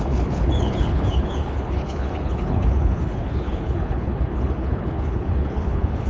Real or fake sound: fake